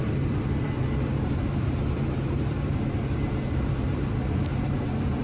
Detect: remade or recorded remade